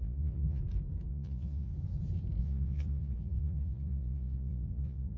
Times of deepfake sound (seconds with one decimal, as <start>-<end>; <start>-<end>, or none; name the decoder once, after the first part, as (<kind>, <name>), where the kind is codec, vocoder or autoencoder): 0.0-0.6 (vocoder, Vocos); 1.1-1.7; 2.4-5.2

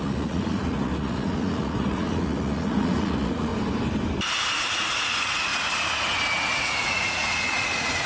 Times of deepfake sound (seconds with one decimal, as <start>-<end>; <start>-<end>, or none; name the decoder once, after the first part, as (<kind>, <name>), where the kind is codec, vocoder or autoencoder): 0.0-3.5 (vocoder, Vocos); 4.7-5.5; 6.5-8.1